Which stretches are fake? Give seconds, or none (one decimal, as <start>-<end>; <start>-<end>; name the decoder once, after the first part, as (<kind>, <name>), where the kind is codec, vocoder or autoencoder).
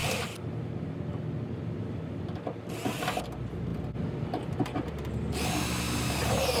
none